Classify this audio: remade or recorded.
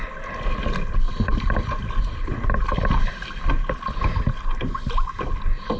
recorded